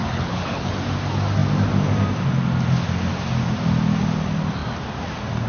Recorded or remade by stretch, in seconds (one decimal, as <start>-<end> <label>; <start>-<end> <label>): 0.0-0.7 remade; 0.7-5.5 recorded